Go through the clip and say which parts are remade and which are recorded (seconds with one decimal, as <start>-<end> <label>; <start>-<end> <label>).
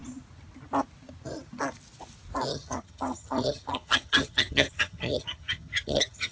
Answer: 0.0-2.5 recorded; 2.5-6.3 remade